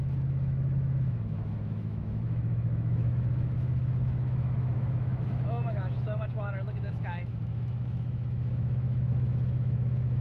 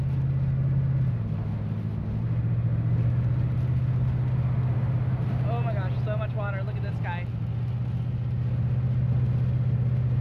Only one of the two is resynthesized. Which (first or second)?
first